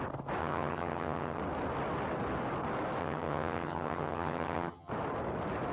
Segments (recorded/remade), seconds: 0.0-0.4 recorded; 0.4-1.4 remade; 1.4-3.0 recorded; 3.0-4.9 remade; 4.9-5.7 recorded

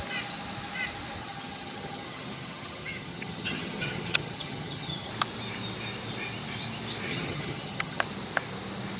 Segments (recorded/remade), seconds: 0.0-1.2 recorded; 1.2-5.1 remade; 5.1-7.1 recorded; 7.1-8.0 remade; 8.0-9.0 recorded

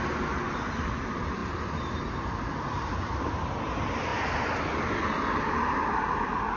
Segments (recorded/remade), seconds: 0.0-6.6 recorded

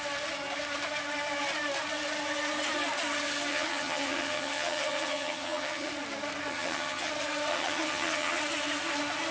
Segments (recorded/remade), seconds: 0.0-3.5 recorded; 3.5-5.9 remade; 5.9-6.5 recorded; 6.5-7.1 remade; 7.1-7.5 recorded; 7.5-8.4 remade; 8.4-9.3 recorded